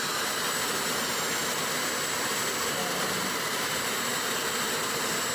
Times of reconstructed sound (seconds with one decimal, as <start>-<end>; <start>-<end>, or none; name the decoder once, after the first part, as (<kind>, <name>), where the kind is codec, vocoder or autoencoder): none